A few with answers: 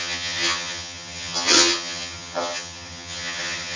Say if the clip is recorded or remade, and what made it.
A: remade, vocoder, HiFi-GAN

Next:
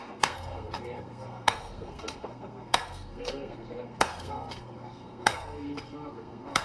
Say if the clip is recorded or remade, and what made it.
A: remade, codec, SNAC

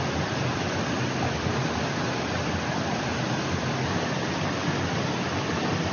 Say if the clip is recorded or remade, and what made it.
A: recorded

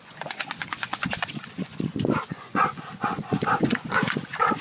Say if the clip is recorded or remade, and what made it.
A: remade, vocoder, Vocos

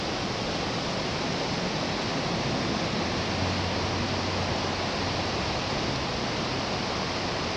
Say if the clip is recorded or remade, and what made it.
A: recorded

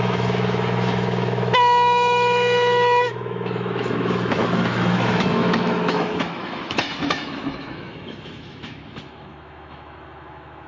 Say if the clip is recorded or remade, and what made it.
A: remade, autoencoder, DAC-VAE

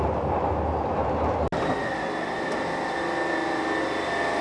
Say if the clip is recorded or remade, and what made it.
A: recorded